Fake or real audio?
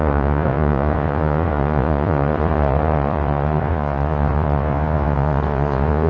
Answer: fake